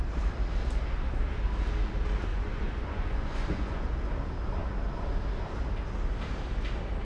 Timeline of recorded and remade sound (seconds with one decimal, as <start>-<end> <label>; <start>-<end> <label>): 0.0-2.3 recorded; 2.3-3.8 remade; 3.8-7.0 recorded